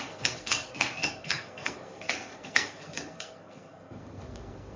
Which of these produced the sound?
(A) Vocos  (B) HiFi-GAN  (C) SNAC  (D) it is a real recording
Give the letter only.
C